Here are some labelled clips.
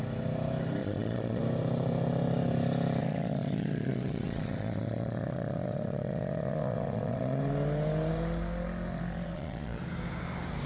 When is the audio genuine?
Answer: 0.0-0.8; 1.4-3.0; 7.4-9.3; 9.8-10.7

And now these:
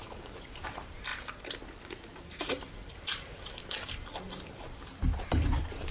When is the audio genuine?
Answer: 1.1-2.4

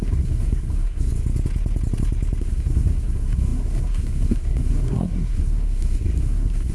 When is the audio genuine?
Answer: 1.1-2.4

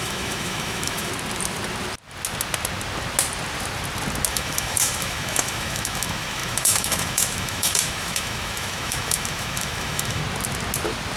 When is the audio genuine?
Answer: 1.1-4.3; 10.2-11.2

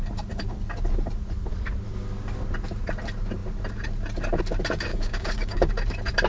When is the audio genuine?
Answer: 0.0-4.9; 5.7-6.3

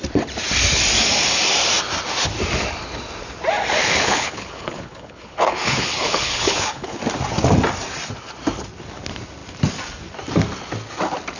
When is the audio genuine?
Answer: 0.0-3.8; 7.0-11.4

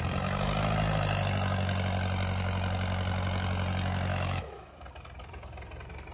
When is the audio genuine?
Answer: 0.0-4.1; 4.7-6.1